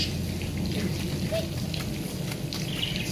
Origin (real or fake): real